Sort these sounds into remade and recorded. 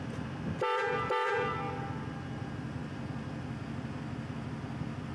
recorded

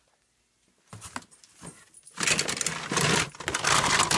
recorded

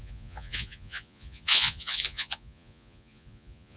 remade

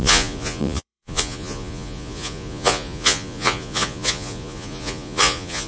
remade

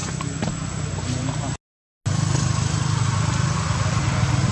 recorded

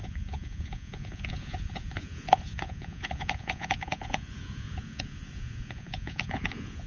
remade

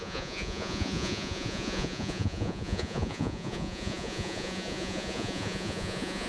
remade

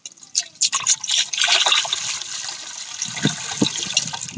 recorded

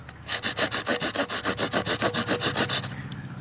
recorded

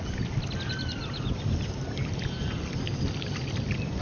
recorded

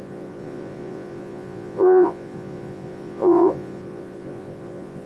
remade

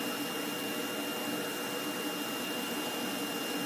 recorded